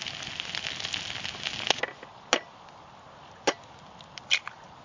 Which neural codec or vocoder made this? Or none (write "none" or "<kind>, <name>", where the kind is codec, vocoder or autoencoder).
none